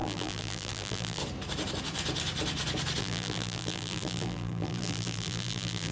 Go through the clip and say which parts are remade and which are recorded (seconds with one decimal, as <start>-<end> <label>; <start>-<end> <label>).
0.0-1.2 remade; 1.2-3.0 recorded; 3.0-5.9 remade